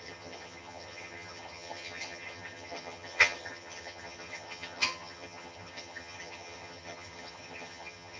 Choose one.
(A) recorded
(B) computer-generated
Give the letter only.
B